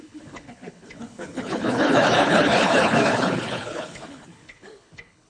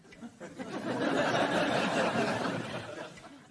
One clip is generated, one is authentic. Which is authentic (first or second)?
second